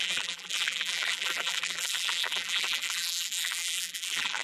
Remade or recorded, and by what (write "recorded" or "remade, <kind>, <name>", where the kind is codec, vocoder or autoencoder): remade, vocoder, BigVGAN v2